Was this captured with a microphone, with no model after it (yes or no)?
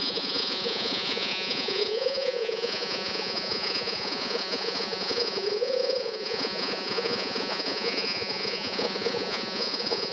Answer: no